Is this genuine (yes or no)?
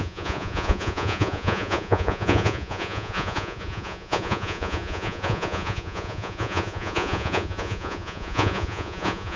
no